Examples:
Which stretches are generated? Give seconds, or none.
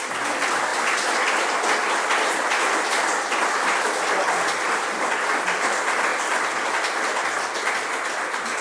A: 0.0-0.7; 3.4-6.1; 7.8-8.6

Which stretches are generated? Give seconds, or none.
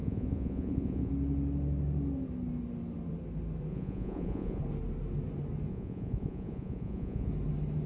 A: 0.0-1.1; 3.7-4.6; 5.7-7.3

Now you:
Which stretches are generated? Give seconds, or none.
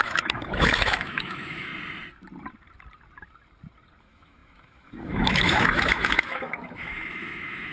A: 0.0-1.7; 4.0-7.7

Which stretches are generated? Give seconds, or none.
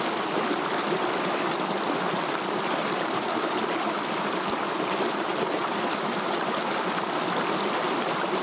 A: none